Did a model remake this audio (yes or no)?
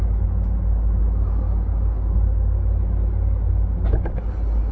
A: no